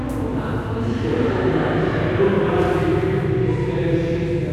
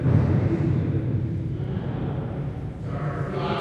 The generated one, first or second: second